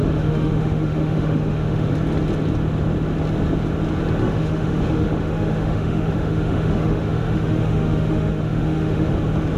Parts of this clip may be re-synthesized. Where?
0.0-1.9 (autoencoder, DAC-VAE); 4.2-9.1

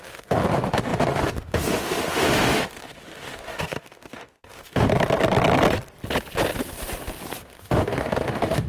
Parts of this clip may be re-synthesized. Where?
0.0-4.9 (autoencoder, DAC-VAE); 7.4-8.7

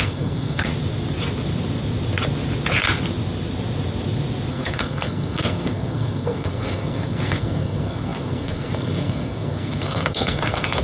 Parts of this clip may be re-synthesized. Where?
0.0-0.7 (codec, SNAC); 4.5-10.8

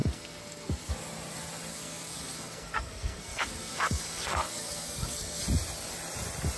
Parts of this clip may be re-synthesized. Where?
0.0-0.9 (codec, SNAC); 1.7-5.4

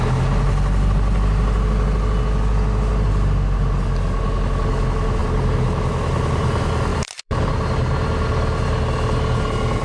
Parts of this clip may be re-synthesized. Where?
5.2-5.8 (vocoder, BigVGAN v2); 6.9-7.5